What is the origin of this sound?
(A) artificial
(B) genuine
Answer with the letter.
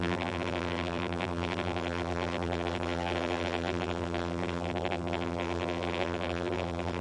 A